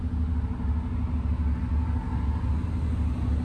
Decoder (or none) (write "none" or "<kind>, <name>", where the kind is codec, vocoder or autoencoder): none